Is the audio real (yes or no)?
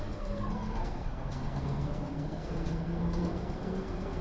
no